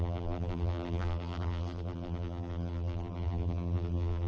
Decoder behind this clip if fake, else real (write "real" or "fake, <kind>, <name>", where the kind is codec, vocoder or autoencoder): fake, vocoder, BigVGAN v2